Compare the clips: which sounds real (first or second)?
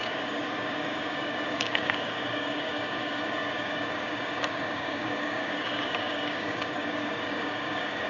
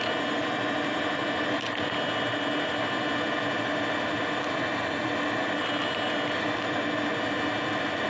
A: second